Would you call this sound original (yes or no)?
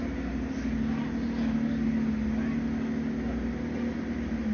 yes